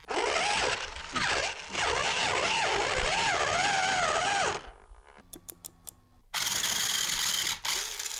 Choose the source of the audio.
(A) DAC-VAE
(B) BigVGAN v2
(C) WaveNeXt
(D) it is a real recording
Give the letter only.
D